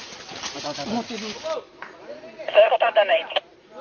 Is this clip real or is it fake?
real